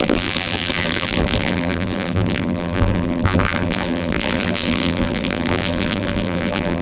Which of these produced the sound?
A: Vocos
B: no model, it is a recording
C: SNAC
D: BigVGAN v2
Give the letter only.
D